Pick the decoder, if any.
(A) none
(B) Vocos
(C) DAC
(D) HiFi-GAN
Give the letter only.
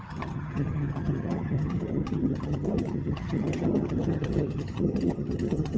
D